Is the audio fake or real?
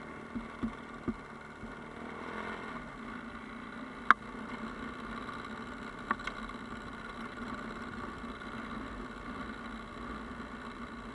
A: real